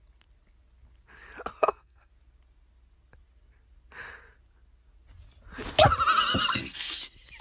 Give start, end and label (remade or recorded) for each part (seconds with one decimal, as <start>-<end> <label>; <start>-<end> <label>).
0.0-1.6 recorded; 1.6-2.1 remade; 2.1-6.5 recorded; 6.5-7.0 remade; 7.0-7.4 recorded